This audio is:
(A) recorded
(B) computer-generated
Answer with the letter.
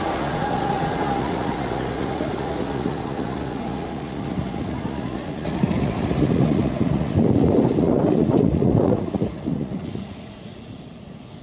B